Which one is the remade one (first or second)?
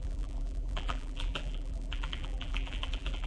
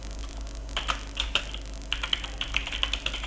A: first